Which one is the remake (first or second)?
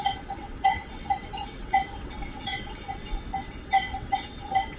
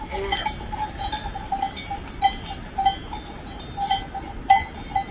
first